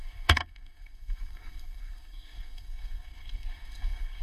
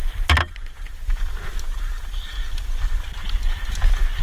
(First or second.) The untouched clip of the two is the second